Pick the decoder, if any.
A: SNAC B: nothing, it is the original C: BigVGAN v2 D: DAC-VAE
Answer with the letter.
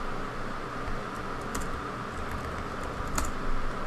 B